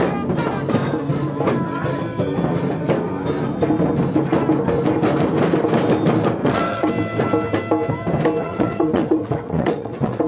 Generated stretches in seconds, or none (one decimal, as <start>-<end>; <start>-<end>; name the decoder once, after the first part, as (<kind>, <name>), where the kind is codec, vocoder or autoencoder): 6.4-6.9 (vocoder, WaveNeXt); 8.4-10.3